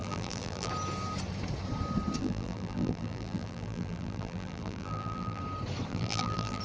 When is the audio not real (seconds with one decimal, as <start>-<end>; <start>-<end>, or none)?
0.0-0.7; 2.2-5.4; 5.9-6.6